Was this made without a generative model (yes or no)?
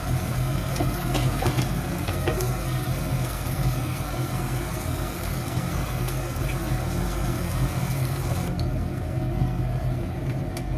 no